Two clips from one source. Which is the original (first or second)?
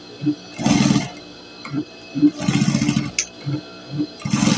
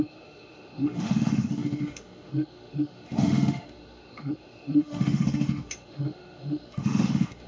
first